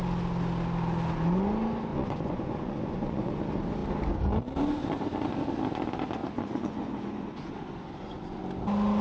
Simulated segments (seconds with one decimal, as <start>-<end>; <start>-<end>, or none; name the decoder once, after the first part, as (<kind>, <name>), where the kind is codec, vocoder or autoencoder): 1.9-3.4 (vocoder, Vocos); 6.2-8.4